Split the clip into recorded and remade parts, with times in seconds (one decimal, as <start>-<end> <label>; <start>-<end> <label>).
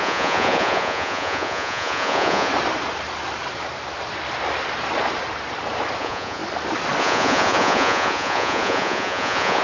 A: 0.0-2.5 remade; 2.5-6.0 recorded; 6.0-6.4 remade; 6.4-7.0 recorded; 7.0-9.6 remade